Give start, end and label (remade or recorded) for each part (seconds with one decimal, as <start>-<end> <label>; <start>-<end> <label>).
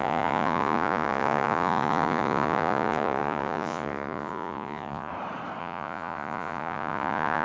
0.0-5.1 remade; 5.1-5.6 recorded; 5.6-7.4 remade